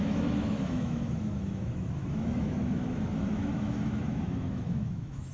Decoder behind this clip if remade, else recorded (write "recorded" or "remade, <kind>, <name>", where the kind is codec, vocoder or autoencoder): remade, autoencoder, DAC-VAE